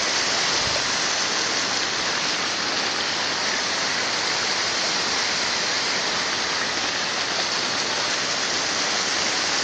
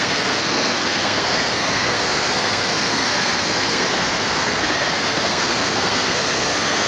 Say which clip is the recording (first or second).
first